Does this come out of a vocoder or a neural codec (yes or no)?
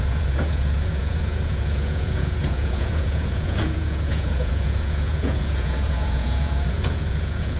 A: yes